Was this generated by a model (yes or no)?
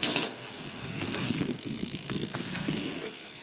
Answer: yes